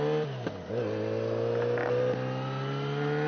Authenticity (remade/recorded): recorded